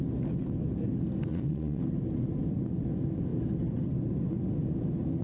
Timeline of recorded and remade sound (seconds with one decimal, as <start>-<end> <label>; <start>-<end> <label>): 0.0-1.3 recorded; 1.3-1.8 remade; 1.8-5.2 recorded